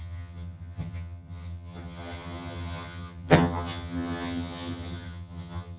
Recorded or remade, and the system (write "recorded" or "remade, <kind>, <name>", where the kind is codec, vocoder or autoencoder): remade, vocoder, HiFi-GAN